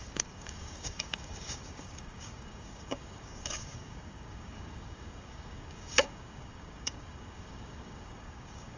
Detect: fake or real fake